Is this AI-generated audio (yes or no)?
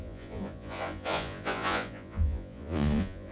yes